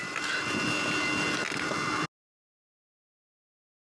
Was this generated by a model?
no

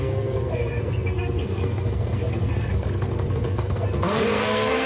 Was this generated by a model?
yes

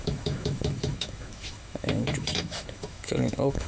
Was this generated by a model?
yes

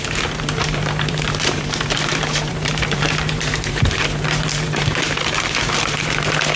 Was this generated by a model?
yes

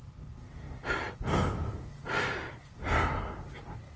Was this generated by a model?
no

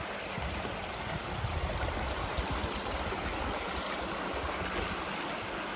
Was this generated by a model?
no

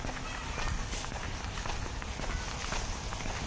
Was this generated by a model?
no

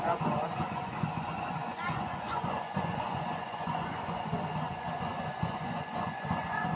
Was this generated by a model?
yes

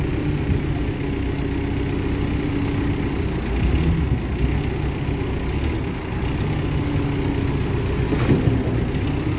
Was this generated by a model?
no